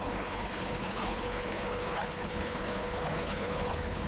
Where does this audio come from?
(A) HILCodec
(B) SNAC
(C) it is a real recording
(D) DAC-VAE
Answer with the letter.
A